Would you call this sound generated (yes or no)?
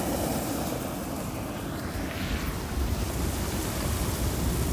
no